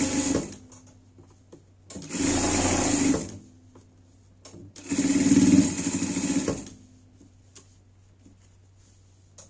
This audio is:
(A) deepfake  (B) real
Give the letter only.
B